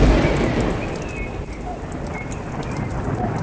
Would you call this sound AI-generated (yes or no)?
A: no